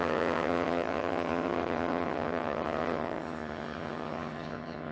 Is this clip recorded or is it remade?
remade